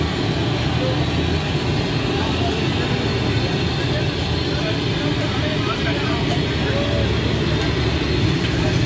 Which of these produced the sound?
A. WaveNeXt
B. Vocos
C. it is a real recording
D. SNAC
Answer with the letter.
C